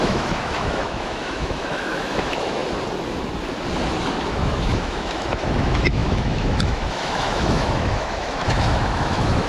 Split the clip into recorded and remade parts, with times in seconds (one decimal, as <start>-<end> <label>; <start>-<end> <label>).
0.0-2.6 remade; 2.6-4.3 recorded; 4.3-9.5 remade